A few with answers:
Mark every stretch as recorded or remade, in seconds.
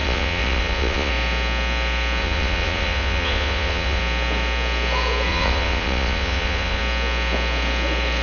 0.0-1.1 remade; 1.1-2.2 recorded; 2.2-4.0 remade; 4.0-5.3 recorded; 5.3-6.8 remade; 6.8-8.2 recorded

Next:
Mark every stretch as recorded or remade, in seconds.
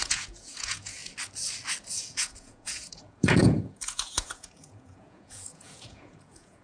0.0-1.0 remade; 1.0-1.9 recorded; 1.9-6.6 remade